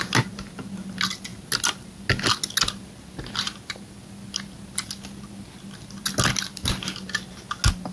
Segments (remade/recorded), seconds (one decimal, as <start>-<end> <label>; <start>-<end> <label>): 0.0-7.9 recorded